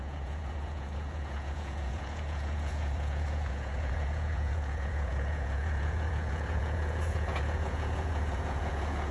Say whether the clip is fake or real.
fake